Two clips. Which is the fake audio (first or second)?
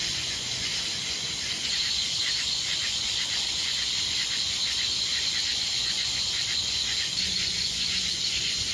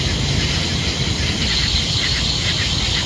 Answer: first